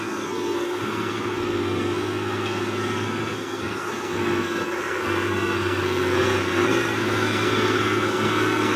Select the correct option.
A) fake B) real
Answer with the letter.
A